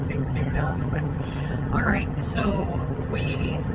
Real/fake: fake